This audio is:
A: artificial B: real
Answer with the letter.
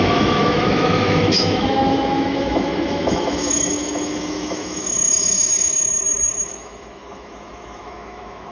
A